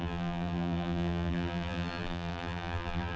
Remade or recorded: remade